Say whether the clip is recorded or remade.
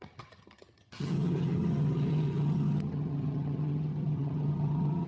remade